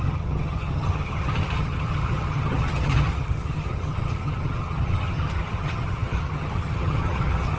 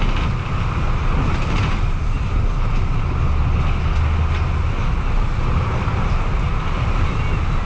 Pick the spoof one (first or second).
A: first